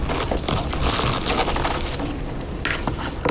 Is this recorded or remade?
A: recorded